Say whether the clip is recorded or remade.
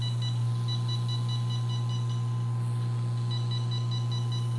recorded